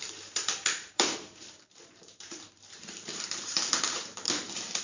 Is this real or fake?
fake